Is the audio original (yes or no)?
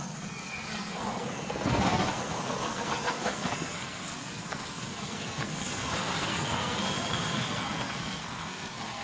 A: no